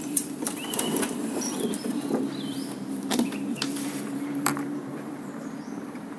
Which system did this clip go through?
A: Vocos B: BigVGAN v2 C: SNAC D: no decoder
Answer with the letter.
B